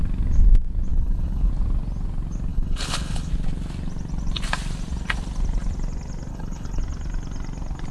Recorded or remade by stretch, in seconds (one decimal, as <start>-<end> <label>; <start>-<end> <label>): 0.0-0.9 recorded; 0.9-1.5 remade; 1.5-2.5 recorded; 2.5-3.3 remade; 3.3-6.3 recorded; 6.3-6.8 remade; 6.8-7.9 recorded